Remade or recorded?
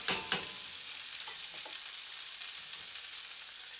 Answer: recorded